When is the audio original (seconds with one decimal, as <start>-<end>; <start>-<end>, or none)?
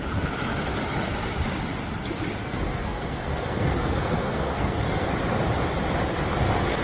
0.0-2.4; 5.1-6.8